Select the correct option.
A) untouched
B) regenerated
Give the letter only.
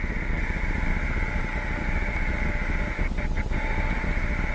A